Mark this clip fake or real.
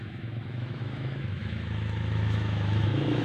fake